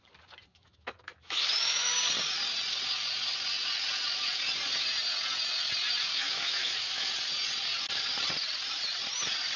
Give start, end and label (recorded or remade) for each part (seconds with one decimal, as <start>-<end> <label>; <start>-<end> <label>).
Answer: 0.0-0.5 recorded; 0.5-1.9 remade; 1.9-6.1 recorded; 6.1-7.1 remade; 7.1-9.6 recorded